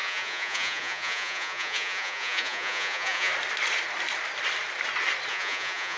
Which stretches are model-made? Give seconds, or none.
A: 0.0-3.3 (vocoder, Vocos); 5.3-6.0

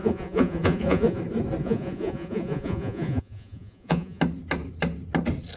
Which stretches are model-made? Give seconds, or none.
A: 0.0-1.2 (vocoder, Vocos); 1.6-4.2